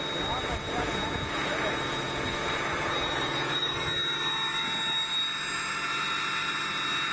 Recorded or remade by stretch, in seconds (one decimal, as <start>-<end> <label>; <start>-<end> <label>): 0.0-0.6 recorded; 0.6-3.7 remade; 3.7-7.1 recorded